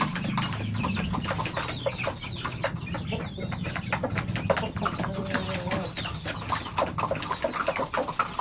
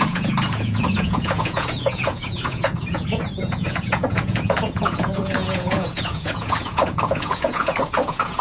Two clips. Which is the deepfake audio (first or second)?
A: second